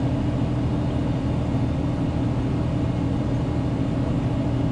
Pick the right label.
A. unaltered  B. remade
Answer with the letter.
A